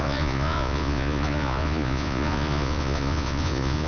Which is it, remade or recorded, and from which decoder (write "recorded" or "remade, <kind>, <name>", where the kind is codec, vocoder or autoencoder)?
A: remade, vocoder, Vocos